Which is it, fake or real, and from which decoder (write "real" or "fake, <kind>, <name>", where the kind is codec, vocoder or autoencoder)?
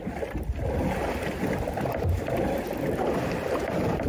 real